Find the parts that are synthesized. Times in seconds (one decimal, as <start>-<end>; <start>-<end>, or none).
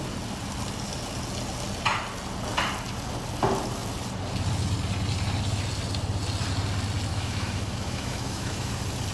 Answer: 7.1-8.7